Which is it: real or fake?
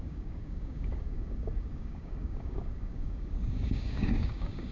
fake